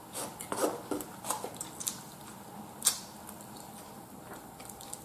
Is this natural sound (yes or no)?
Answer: yes